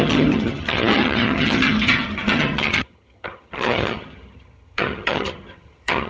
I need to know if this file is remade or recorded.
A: remade